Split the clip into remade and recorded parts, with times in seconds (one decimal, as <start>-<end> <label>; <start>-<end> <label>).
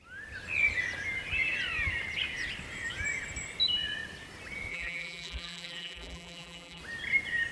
0.0-4.7 recorded; 4.7-6.8 remade; 6.8-7.5 recorded